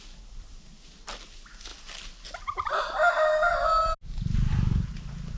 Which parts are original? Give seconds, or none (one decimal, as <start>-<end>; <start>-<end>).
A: 0.0-5.4